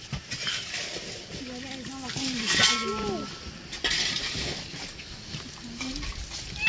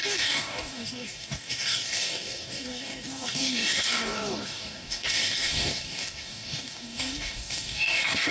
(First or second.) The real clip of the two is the first